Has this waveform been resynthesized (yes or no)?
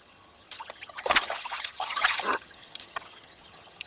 yes